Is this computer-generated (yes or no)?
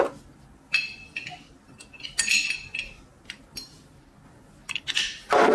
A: no